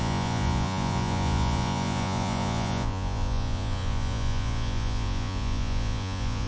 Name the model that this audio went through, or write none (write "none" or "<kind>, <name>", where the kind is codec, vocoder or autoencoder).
vocoder, Vocos